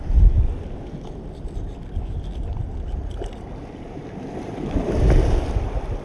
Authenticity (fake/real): real